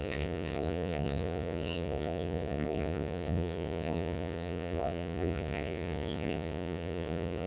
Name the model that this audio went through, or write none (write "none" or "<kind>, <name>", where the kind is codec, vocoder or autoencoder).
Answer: vocoder, Vocos